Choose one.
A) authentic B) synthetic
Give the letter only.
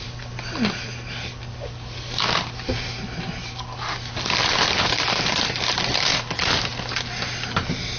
A